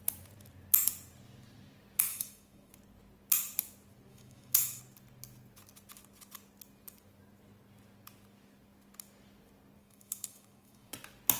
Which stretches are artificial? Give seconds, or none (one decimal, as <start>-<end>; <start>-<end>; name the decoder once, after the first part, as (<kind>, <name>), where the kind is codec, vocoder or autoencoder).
2.1-2.7 (autoencoder, DAC-VAE); 4.1-4.8; 9.8-10.9